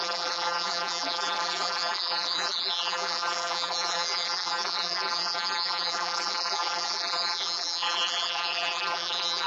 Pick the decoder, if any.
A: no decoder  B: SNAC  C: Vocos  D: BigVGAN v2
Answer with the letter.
D